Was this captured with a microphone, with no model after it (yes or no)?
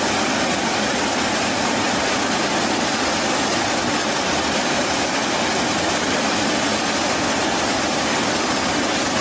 yes